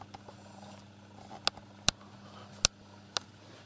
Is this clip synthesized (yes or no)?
no